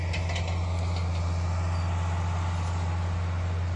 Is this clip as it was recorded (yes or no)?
yes